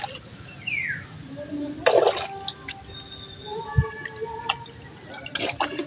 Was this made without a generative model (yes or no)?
yes